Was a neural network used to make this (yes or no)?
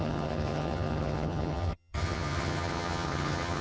yes